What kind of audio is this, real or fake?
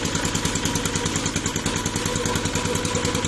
real